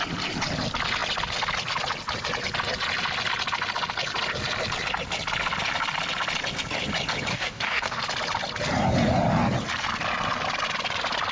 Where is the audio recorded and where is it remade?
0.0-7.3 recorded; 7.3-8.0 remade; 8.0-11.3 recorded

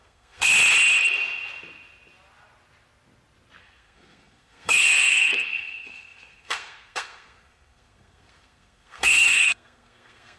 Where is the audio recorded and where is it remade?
0.0-0.5 remade; 0.5-3.6 recorded; 3.6-10.4 remade

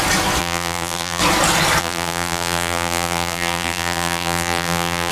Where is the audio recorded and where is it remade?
0.0-0.4 recorded; 0.4-1.2 remade; 1.2-1.8 recorded; 1.8-5.1 remade